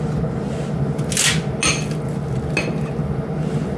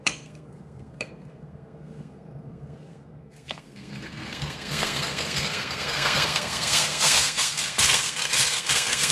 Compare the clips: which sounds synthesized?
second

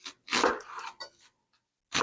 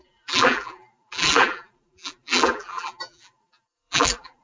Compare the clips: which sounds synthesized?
second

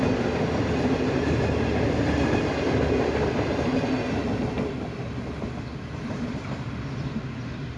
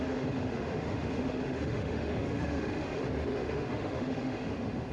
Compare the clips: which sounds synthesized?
second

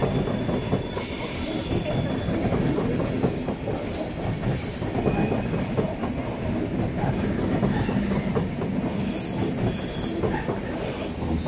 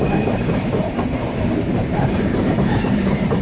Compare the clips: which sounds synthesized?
second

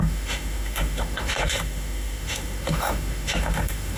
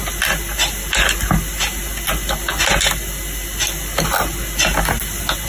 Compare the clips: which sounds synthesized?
first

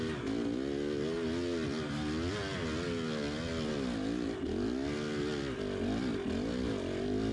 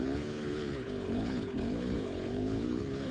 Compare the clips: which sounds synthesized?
second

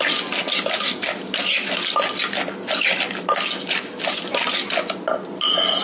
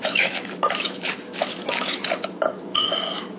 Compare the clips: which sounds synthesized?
second